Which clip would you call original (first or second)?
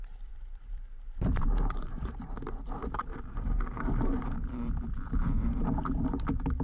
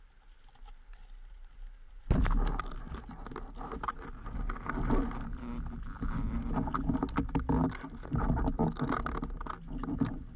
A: second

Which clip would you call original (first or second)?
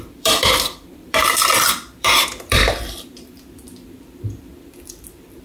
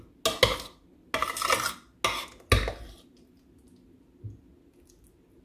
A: second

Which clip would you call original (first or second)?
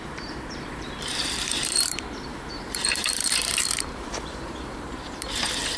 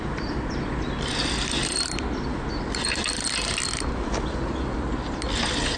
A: second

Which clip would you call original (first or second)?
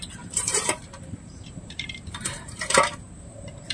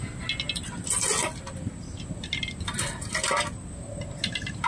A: second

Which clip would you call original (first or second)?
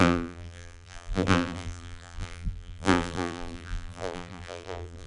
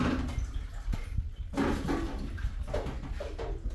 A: second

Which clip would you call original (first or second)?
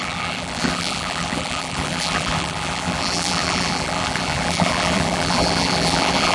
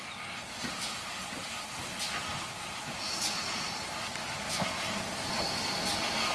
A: second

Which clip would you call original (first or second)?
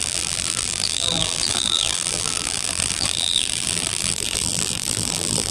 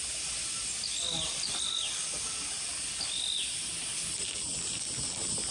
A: second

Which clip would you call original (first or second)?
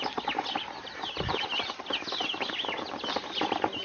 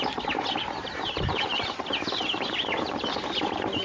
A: first